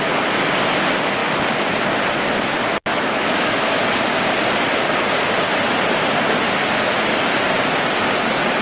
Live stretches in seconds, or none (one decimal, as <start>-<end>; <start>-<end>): 0.0-2.9; 3.8-8.6